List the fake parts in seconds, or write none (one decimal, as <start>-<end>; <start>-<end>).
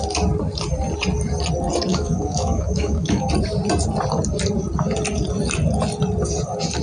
1.9-3.3